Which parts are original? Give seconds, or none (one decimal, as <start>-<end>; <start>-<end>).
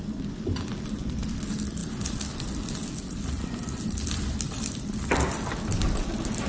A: none